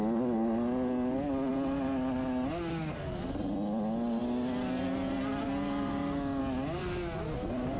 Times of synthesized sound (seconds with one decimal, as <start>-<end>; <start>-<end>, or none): none